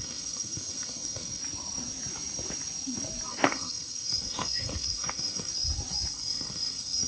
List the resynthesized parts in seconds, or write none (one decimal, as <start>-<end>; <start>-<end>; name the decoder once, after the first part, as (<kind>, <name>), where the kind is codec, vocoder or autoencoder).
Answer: 0.0-1.4 (codec, SNAC); 3.3-5.5; 6.1-7.1

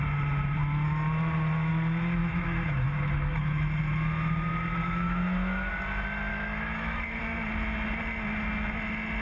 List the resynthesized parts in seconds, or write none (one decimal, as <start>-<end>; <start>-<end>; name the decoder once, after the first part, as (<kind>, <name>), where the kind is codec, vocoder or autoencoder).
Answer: 2.2-3.9 (autoencoder, DAC-VAE); 4.8-5.7; 6.3-7.2

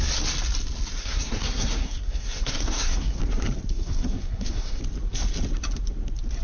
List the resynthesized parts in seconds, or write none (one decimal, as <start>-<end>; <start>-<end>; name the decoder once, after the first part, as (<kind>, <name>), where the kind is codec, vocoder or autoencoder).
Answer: 1.0-3.2 (codec, SNAC); 3.7-4.8